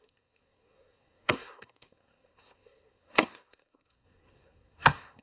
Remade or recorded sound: remade